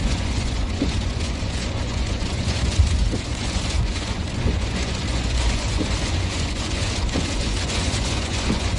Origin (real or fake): fake